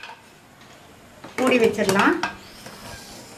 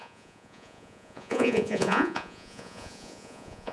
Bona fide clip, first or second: first